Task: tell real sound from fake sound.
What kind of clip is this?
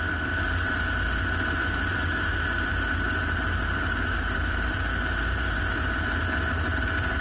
fake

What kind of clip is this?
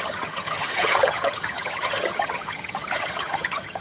fake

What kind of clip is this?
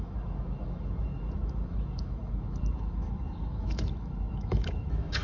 fake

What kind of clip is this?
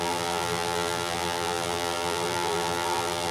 fake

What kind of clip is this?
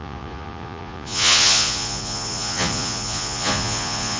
fake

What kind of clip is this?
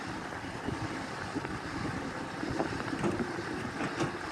fake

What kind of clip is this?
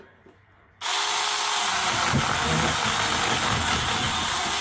real